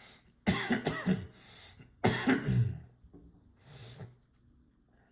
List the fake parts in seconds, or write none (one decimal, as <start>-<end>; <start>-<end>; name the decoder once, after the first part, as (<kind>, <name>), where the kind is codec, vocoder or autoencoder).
none